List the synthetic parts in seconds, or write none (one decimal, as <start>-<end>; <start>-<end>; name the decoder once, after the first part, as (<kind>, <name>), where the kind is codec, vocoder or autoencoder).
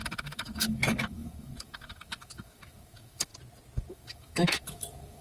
0.0-3.3 (autoencoder, DAC-VAE); 3.9-5.2